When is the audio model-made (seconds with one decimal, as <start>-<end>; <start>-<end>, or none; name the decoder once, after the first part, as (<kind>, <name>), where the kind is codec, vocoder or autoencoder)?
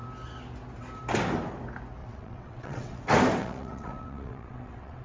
2.0-3.0 (vocoder, WaveNeXt); 3.4-5.0